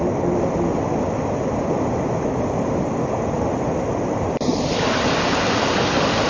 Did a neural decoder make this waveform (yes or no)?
no